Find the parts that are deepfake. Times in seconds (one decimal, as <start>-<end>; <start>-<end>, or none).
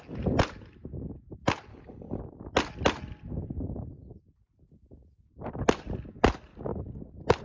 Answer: 1.7-2.2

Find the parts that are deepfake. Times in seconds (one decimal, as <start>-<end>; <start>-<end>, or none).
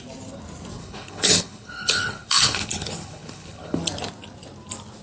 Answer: 0.8-3.8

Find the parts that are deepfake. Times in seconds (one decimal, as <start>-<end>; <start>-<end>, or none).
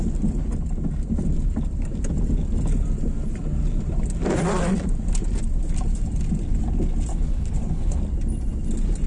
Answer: 7.1-8.0